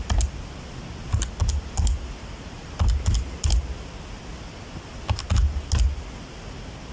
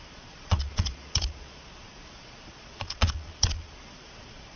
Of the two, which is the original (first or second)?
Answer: first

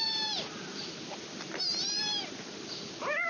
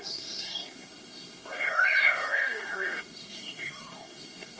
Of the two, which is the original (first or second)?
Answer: first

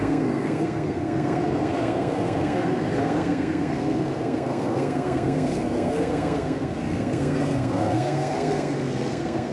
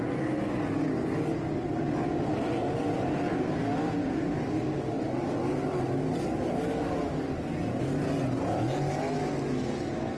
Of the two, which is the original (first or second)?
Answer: second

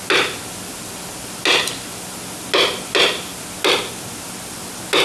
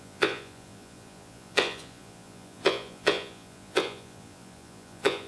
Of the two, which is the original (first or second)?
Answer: first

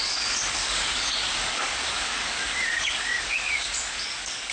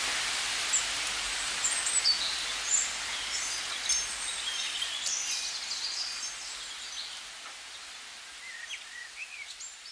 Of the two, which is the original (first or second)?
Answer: second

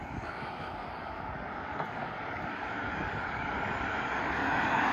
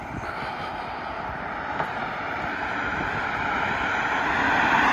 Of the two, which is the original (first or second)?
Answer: second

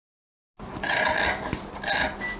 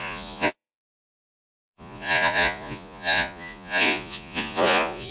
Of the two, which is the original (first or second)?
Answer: first